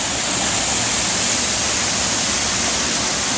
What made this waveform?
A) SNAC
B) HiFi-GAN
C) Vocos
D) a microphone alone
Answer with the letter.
D